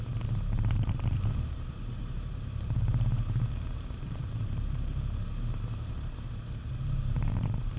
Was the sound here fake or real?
fake